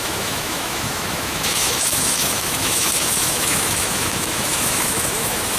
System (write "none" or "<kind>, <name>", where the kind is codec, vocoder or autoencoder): autoencoder, DAC-VAE